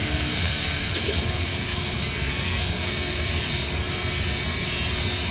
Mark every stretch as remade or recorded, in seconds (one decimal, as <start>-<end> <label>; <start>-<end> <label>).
0.0-3.2 remade; 3.2-5.3 recorded